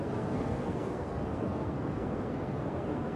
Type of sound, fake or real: fake